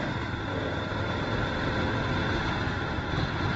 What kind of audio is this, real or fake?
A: real